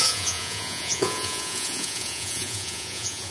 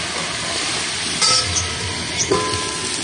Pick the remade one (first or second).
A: first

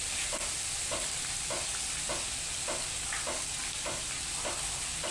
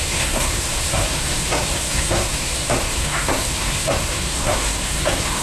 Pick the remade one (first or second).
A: second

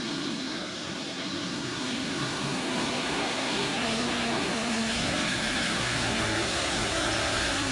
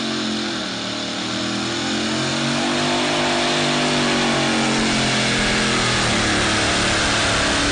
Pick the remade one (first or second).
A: first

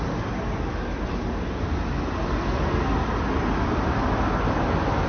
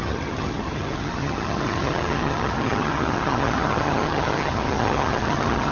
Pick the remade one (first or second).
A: second